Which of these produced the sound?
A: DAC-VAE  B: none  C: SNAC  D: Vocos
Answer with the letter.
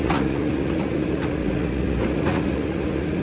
D